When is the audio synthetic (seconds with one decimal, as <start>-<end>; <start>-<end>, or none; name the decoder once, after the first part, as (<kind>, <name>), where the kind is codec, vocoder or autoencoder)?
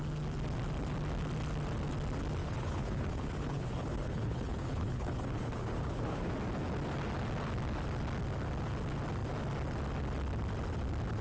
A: 2.4-6.3 (codec, HILCodec)